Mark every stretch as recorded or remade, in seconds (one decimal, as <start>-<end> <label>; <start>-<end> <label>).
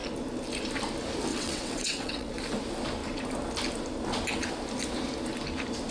0.0-1.3 recorded; 1.3-2.3 remade; 2.3-5.9 recorded